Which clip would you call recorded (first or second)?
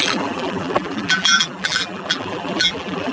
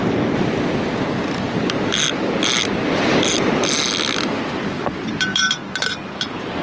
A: second